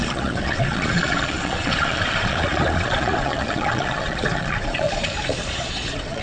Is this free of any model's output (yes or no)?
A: no